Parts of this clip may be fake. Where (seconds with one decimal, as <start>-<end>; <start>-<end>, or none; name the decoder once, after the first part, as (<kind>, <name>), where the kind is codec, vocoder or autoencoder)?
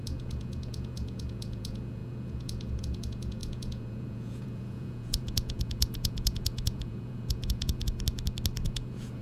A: 0.0-7.9 (vocoder, Vocos); 8.6-9.2